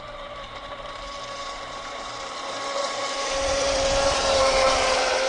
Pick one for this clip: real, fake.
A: fake